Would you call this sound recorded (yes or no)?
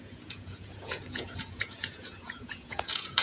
no